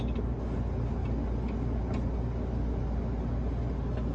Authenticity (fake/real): real